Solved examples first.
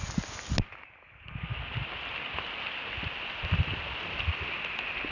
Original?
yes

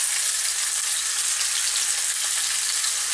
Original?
yes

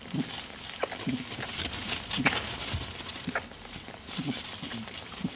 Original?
yes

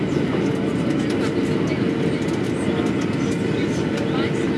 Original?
yes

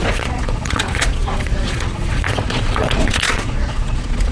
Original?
no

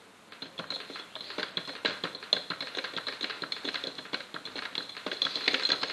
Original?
yes